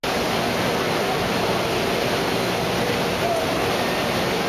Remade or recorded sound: recorded